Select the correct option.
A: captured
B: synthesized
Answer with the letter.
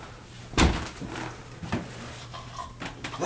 A